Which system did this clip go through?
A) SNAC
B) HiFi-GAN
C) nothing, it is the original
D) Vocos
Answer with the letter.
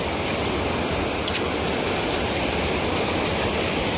C